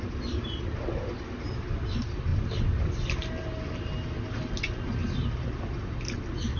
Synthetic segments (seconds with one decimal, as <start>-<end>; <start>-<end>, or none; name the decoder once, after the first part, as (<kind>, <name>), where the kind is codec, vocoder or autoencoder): none